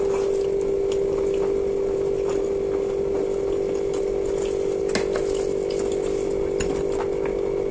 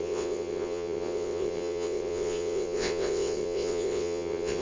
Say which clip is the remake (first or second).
second